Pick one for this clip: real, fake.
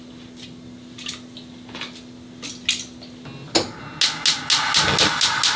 real